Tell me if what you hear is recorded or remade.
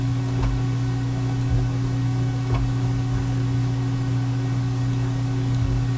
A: remade